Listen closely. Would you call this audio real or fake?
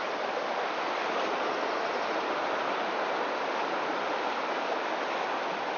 real